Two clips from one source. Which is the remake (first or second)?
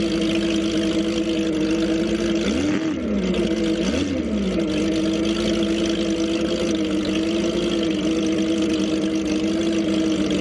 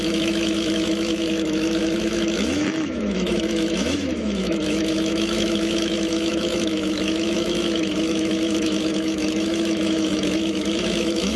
second